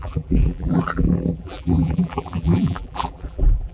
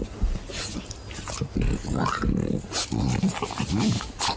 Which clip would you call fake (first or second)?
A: first